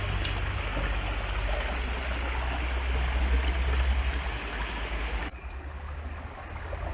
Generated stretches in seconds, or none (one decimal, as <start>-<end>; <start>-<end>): none